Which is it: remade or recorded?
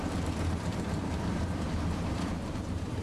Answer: remade